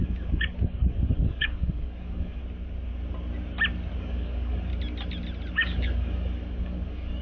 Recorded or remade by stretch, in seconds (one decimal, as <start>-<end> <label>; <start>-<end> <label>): 0.0-2.4 remade; 2.4-4.0 recorded; 4.0-4.7 remade; 4.7-5.5 recorded; 5.5-7.2 remade